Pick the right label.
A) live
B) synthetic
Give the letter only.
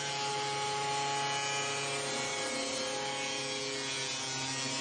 A